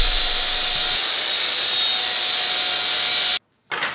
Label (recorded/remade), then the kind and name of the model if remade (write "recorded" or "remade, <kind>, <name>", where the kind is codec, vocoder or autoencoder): recorded